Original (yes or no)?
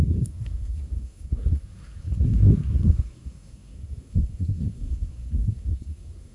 no